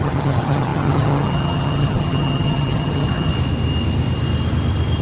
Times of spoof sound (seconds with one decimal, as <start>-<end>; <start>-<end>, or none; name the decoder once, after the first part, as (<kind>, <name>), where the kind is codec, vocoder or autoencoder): 0.0-3.3 (vocoder, HiFi-GAN)